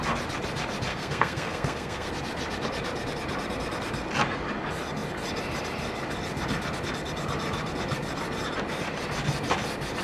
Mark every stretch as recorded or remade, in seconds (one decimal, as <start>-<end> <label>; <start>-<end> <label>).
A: 0.0-0.9 recorded; 0.9-2.1 remade; 2.1-10.0 recorded